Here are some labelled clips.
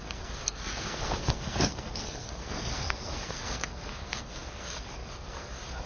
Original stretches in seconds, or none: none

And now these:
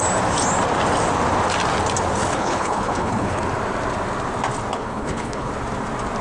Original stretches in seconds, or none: 0.0-2.3; 3.4-4.7; 5.5-6.2